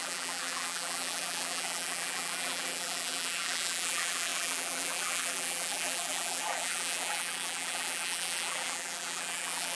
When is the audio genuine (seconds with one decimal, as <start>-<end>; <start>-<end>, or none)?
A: none